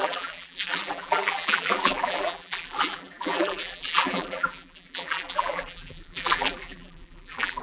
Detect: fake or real fake